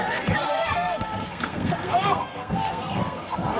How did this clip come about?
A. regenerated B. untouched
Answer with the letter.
A